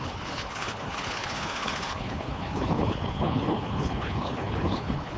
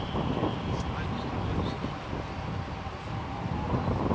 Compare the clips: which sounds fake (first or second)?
first